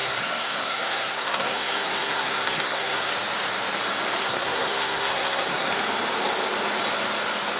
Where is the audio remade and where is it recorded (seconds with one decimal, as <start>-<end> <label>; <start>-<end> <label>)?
0.0-3.1 remade; 3.1-4.2 recorded; 4.2-5.7 remade; 5.7-7.6 recorded